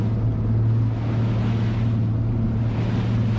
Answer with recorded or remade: recorded